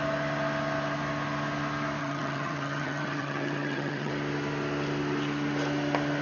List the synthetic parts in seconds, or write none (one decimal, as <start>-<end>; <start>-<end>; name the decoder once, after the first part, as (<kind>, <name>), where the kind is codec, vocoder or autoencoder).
2.0-4.1 (vocoder, HiFi-GAN)